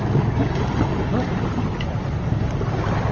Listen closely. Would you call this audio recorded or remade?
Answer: recorded